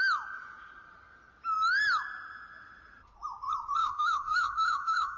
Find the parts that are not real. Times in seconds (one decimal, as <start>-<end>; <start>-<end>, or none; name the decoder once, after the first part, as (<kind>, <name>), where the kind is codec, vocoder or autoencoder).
3.8-5.2 (autoencoder, DAC-VAE)